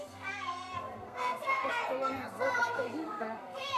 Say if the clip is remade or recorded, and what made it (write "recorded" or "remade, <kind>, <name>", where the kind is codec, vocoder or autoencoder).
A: remade, codec, SNAC